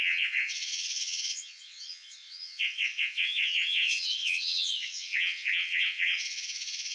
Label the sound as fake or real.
fake